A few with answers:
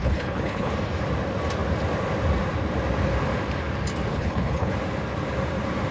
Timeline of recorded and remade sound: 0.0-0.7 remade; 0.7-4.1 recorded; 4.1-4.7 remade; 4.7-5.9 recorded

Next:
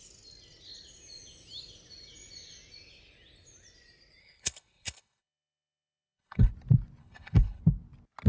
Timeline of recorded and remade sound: 0.0-4.2 recorded; 4.2-6.5 remade; 6.5-7.0 recorded; 7.0-7.6 remade; 7.6-8.3 recorded

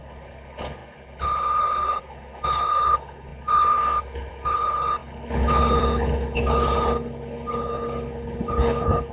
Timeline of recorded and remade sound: 0.0-9.1 remade

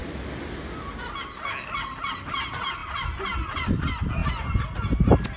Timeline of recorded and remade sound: 0.0-5.4 recorded

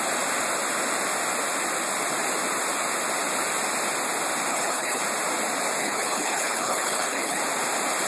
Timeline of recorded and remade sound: 0.0-4.5 recorded; 4.5-5.0 remade; 5.0-5.8 recorded; 5.8-7.4 remade; 7.4-8.1 recorded

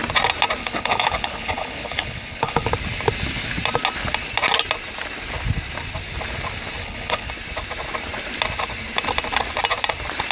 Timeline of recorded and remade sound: 0.0-0.6 recorded; 0.6-2.7 remade; 2.7-6.8 recorded; 6.8-7.3 remade; 7.3-10.3 recorded